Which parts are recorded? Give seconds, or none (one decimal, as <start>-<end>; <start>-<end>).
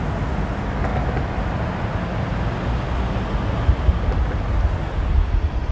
0.0-5.7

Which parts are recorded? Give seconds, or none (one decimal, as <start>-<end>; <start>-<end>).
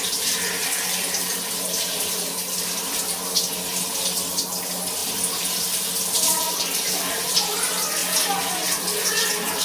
0.0-0.6; 3.5-9.6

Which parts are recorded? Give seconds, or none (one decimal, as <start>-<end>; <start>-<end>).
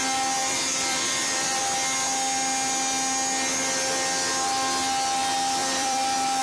0.0-0.4; 1.6-5.6